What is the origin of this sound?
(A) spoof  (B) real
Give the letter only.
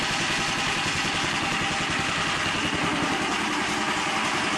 B